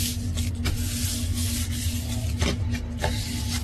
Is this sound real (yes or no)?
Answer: yes